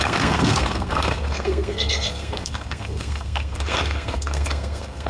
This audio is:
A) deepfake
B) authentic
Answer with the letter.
A